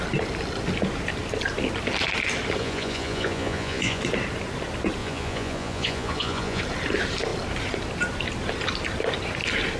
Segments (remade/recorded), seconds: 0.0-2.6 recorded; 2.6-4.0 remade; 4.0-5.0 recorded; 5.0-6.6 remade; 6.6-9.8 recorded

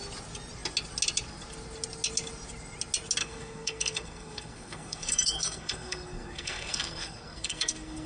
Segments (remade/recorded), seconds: 0.0-3.2 recorded; 3.2-8.1 remade

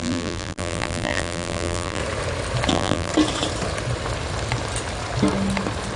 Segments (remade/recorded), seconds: 0.0-2.0 remade; 2.0-2.7 recorded; 2.7-3.1 remade; 3.1-6.0 recorded